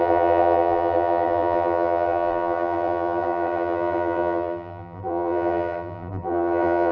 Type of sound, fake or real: fake